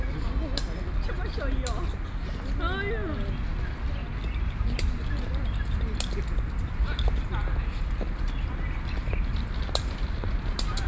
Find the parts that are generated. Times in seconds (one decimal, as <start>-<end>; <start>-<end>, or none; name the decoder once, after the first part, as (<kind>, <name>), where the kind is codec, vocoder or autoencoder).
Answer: none